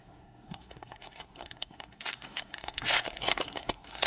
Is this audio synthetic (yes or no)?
yes